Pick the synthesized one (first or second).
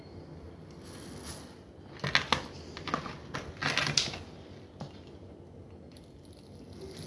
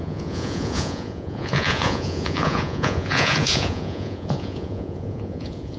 second